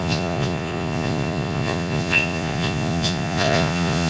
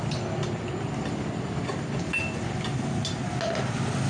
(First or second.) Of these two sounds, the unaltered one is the second